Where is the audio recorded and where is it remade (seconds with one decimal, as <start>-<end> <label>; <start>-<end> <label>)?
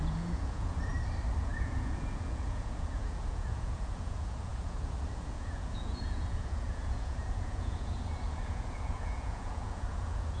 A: 0.0-0.9 remade; 0.9-1.4 recorded; 1.4-10.4 remade